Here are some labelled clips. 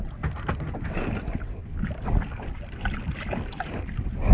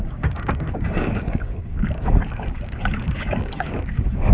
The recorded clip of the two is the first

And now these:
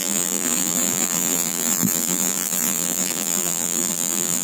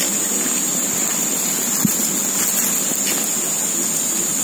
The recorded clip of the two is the second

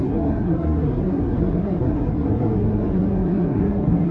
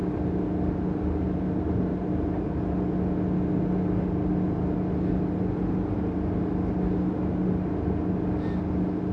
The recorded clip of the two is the second